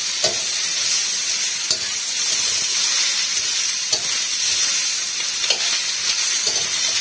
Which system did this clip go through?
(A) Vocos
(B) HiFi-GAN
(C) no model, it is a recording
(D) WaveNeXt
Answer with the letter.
C